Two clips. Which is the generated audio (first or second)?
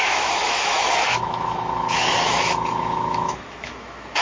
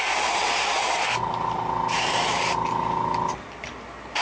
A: first